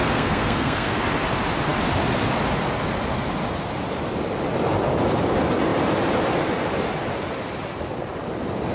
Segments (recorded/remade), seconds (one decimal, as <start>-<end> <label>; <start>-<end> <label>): 0.0-1.0 remade; 1.0-8.7 recorded